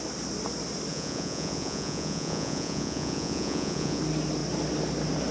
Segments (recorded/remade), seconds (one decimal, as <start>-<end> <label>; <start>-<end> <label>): 0.0-0.9 recorded; 0.9-4.0 remade; 4.0-5.3 recorded